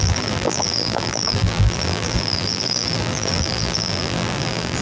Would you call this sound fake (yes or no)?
yes